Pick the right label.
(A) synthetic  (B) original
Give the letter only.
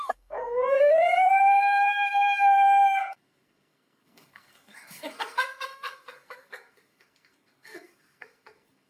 A